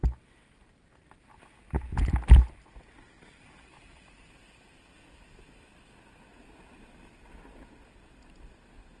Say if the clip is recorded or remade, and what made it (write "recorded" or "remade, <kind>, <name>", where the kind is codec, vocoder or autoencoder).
recorded